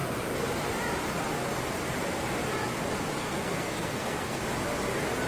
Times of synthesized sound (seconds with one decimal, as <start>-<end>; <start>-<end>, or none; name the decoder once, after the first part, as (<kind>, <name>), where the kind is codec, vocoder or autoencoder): 3.2-4.4 (codec, SNAC)